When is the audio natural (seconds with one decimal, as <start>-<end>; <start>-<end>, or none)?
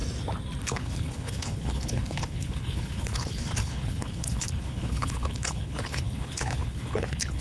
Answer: 0.0-0.6